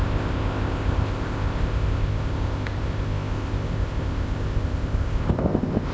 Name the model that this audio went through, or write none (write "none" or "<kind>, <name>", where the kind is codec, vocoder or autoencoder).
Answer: codec, ZipCodec